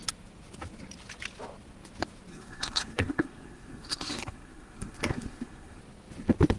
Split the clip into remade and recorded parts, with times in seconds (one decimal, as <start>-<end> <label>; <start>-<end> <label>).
0.0-2.3 recorded; 2.3-5.8 remade; 5.8-6.6 recorded